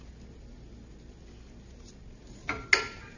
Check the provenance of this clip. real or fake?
real